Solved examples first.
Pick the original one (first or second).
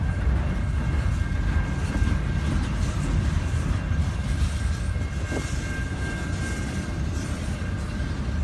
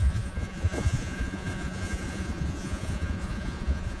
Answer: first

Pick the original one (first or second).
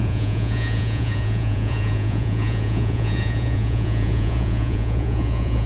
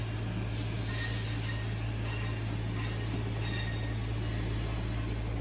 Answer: second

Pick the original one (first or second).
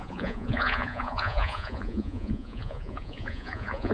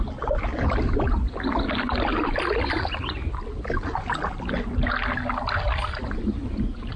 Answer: second